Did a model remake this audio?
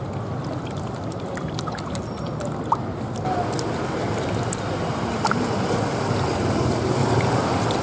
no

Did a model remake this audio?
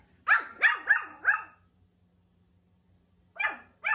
no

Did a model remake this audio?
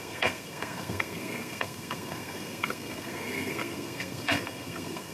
yes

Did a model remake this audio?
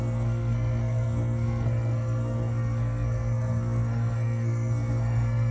yes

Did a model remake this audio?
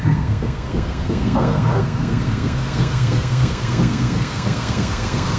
yes